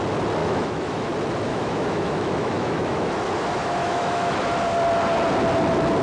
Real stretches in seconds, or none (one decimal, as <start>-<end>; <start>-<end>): 0.0-0.4; 1.1-1.5; 3.1-3.8; 4.4-6.0